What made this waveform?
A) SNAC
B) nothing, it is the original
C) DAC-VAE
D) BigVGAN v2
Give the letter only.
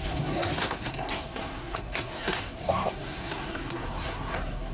A